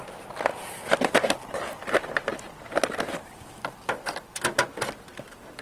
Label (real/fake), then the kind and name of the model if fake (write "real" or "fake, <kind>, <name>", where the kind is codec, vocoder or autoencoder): real